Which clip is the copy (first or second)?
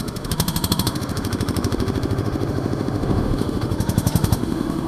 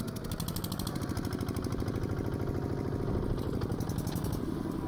first